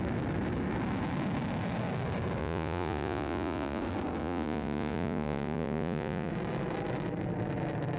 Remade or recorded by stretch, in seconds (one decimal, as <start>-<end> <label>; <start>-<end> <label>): 0.0-2.4 recorded; 2.4-3.8 remade; 3.8-4.2 recorded; 4.2-6.3 remade; 6.3-8.0 recorded